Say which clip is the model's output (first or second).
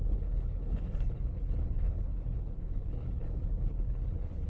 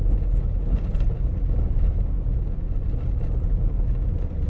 first